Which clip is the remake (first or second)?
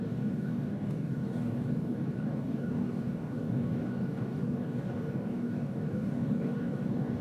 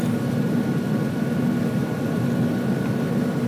first